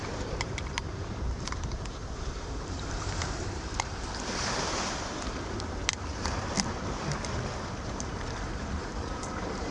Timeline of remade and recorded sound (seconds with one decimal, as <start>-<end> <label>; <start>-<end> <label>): 0.0-5.8 remade; 5.8-7.8 recorded; 7.8-9.7 remade